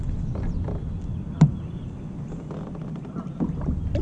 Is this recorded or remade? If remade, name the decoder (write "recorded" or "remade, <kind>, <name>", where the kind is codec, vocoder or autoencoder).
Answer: recorded